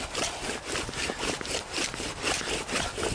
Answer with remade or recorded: recorded